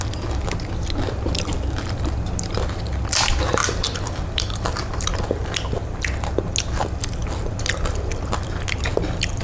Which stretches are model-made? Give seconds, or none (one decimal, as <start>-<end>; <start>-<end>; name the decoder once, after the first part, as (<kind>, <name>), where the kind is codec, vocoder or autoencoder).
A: 3.6-6.0 (vocoder, BigVGAN v2)